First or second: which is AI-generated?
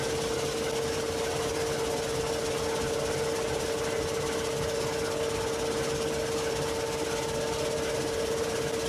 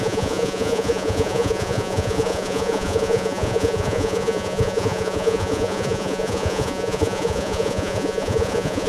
second